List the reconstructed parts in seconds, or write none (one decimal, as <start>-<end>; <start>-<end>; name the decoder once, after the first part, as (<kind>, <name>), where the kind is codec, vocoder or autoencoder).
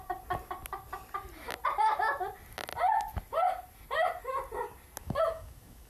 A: 5.0-5.9 (autoencoder, DAC-VAE)